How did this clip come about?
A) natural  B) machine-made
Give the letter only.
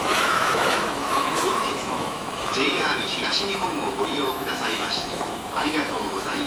B